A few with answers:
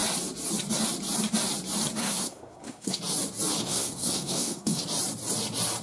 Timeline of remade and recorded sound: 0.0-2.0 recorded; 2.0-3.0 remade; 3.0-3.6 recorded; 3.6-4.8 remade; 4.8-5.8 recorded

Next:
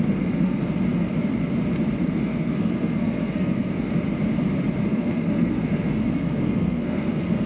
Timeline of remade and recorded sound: 0.0-0.6 remade; 0.6-2.1 recorded; 2.1-3.7 remade; 3.7-4.9 recorded; 4.9-7.5 remade

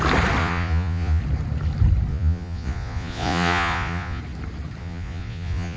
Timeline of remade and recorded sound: 0.0-0.4 recorded; 0.4-1.2 remade; 1.2-2.1 recorded; 2.1-4.2 remade; 4.2-4.8 recorded; 4.8-5.8 remade

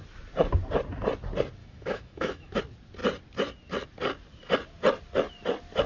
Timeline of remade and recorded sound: 0.0-1.6 recorded; 1.6-2.6 remade; 2.6-5.9 recorded

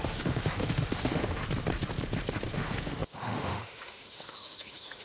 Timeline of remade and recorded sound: 0.0-1.4 remade; 1.4-2.5 recorded; 2.5-5.0 remade

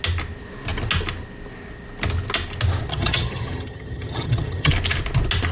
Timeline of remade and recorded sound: 0.0-2.9 recorded; 2.9-4.7 remade; 4.7-5.5 recorded